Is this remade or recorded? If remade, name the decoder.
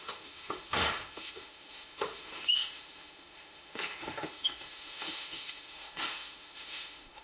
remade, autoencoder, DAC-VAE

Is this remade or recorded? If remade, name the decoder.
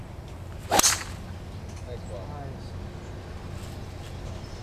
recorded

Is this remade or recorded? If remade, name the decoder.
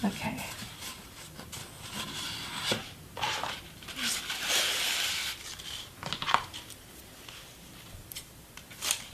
recorded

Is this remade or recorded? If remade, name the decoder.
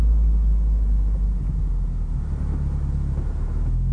recorded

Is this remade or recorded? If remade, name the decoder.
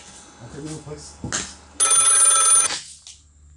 recorded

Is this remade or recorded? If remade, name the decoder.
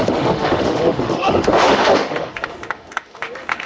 remade, autoencoder, DAC-VAE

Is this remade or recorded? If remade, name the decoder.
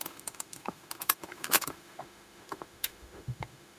remade, autoencoder, DAC-VAE